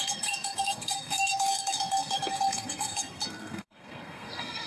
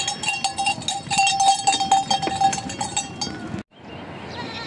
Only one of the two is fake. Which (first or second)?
first